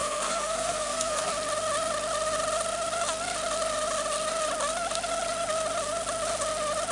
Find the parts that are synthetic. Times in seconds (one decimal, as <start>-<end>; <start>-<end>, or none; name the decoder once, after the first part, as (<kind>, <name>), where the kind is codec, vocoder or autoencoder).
0.0-1.3 (codec, SNAC)